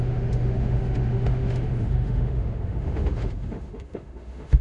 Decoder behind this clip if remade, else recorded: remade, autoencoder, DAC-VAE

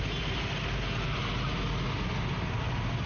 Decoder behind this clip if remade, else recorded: recorded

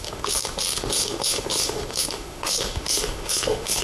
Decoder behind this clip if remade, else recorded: remade, autoencoder, DAC-VAE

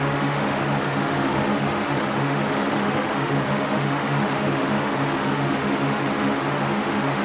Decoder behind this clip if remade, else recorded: remade, autoencoder, DAC-VAE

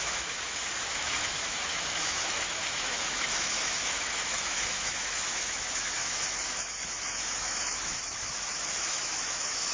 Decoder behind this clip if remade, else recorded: remade, autoencoder, DAC-VAE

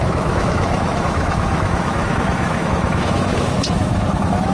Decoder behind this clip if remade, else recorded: remade, autoencoder, DAC-VAE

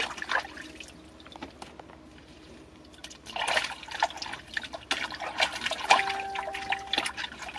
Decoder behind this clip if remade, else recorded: recorded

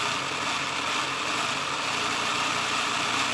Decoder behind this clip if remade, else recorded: recorded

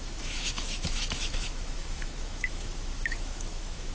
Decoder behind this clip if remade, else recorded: remade, autoencoder, DAC-VAE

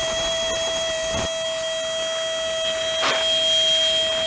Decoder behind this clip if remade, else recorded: recorded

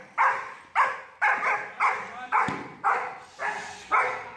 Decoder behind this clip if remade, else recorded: recorded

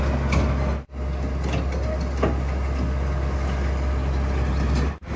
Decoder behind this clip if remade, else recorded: recorded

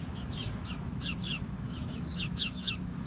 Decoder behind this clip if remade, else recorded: remade, autoencoder, DAC-VAE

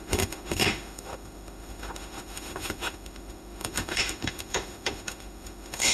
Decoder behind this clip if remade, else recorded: remade, autoencoder, DAC-VAE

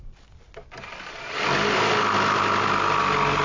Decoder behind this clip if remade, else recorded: recorded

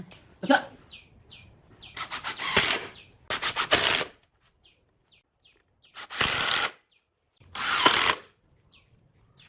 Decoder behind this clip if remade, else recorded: recorded